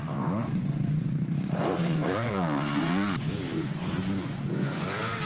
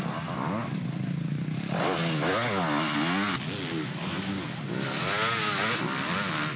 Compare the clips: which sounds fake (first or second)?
first